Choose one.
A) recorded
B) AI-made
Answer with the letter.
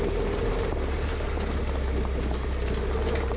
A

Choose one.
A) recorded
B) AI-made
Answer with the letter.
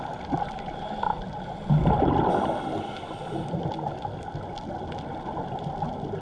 A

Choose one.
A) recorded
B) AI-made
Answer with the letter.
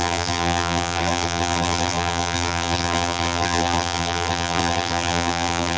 B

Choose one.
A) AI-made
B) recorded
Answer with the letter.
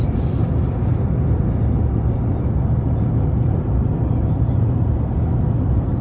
A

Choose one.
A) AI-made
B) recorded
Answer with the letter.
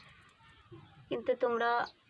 B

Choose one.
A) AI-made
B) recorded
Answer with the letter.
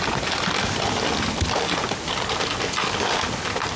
B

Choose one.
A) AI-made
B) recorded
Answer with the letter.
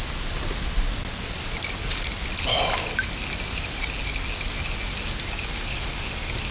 B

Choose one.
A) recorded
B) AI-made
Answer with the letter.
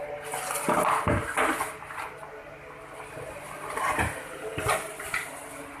B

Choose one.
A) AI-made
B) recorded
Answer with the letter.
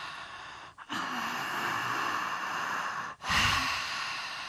B